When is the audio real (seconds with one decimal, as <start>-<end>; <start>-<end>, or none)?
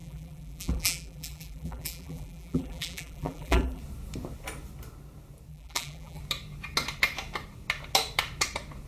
3.8-5.5; 6.2-8.9